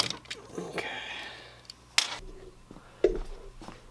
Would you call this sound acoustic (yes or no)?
yes